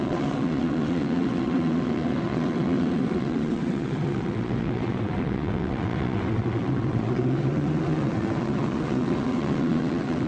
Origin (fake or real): fake